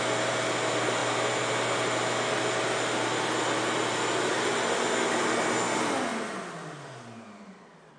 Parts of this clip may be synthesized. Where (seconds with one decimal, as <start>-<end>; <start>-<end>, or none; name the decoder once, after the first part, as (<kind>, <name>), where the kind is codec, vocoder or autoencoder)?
none